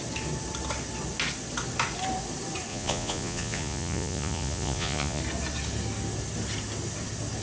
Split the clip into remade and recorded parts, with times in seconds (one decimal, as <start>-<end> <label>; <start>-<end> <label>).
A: 0.0-2.7 recorded; 2.7-5.2 remade; 5.2-7.4 recorded